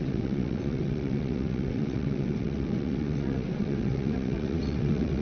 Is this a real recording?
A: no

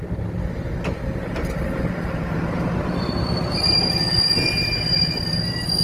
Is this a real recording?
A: yes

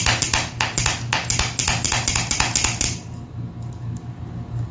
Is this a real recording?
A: yes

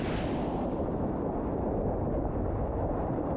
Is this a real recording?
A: yes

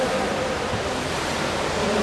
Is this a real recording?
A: no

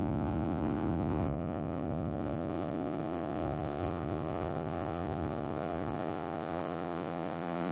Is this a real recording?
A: no